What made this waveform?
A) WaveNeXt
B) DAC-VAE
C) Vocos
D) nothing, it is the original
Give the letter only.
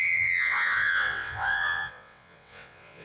A